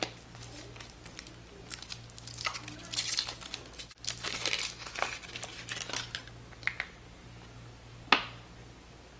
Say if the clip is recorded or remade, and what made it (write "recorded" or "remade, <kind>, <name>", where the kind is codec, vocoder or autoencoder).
recorded